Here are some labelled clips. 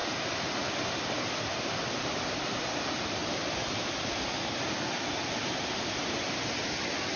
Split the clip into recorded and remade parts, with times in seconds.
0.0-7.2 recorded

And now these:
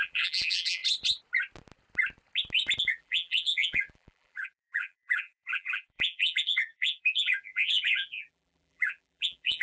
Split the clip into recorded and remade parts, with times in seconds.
0.0-0.8 remade; 0.8-2.8 recorded; 2.8-9.6 remade

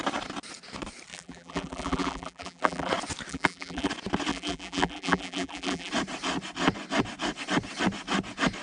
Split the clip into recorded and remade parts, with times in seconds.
0.0-1.1 recorded; 1.1-2.9 remade; 2.9-3.3 recorded; 3.3-3.9 remade; 3.9-4.3 recorded; 4.3-5.9 remade; 5.9-8.6 recorded

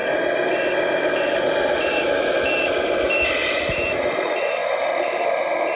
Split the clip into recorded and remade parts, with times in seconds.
0.0-5.8 remade

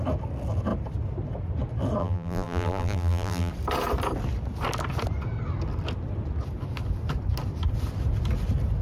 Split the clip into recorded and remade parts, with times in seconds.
0.0-2.0 recorded; 2.0-3.5 remade; 3.5-8.8 recorded

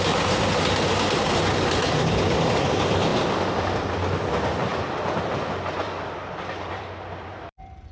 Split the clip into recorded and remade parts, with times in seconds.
0.0-4.7 recorded; 4.7-5.3 remade; 5.3-5.8 recorded; 5.8-7.9 remade

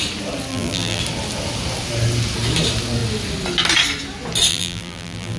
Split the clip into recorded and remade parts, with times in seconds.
0.0-0.5 recorded; 0.5-1.0 remade; 1.0-4.5 recorded; 4.5-5.4 remade

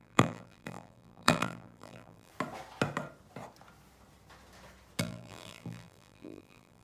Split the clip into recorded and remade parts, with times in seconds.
0.0-2.3 remade; 2.3-5.0 recorded; 5.0-6.8 remade